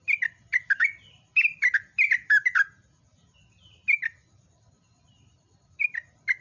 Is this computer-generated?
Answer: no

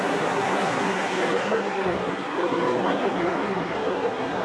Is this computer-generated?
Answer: yes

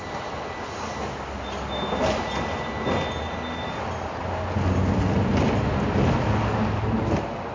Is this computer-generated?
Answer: no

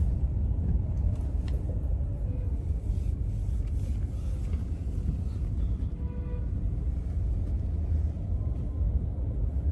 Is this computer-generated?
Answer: no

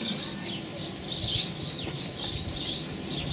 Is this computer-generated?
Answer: no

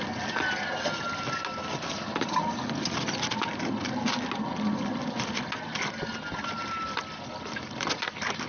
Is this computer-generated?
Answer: no